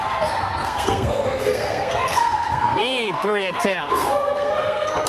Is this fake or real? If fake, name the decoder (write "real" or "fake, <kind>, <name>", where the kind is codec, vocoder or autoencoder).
fake, codec, SNAC